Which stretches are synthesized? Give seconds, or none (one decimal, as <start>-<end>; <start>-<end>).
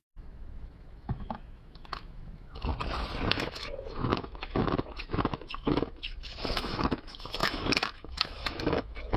0.0-2.7; 3.3-9.2